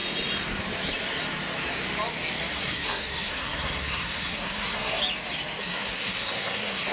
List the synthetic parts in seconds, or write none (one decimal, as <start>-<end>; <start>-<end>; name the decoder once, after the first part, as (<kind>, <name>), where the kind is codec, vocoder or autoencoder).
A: 2.5-5.0 (codec, SNAC); 5.6-6.9